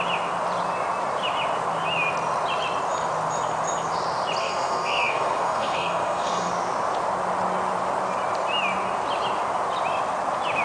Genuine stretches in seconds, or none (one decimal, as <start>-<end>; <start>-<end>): 0.0-4.4; 6.5-10.6